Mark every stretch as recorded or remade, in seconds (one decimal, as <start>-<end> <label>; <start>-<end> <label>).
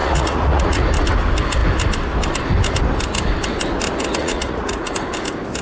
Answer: 0.0-0.8 remade; 0.8-4.2 recorded; 4.2-4.9 remade; 4.9-5.6 recorded